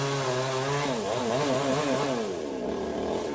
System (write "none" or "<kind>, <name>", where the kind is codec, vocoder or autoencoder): none